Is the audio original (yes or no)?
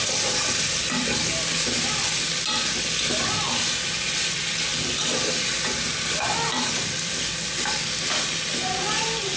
yes